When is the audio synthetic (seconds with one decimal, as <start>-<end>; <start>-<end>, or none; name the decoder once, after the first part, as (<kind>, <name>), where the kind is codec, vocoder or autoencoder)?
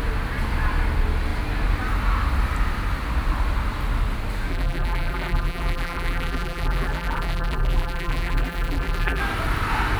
4.5-9.2 (vocoder, BigVGAN v2)